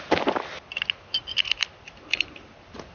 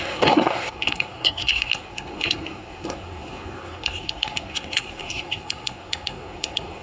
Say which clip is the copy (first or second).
second